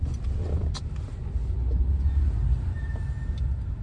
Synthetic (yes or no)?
no